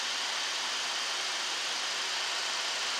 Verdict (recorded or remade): recorded